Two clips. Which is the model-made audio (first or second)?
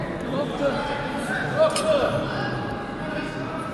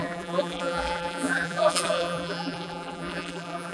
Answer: second